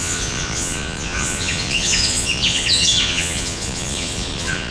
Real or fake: fake